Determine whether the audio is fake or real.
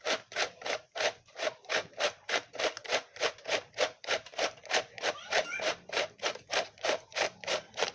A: fake